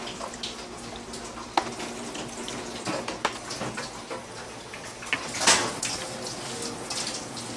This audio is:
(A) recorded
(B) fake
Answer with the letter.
A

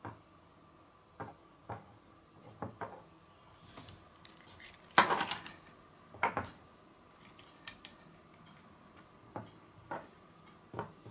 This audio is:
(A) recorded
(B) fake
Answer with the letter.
A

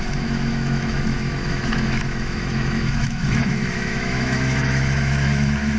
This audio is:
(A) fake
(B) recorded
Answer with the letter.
A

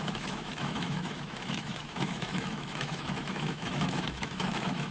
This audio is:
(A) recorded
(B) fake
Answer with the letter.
B